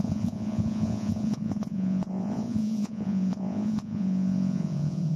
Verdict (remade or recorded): remade